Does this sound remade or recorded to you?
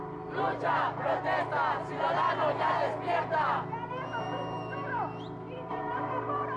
recorded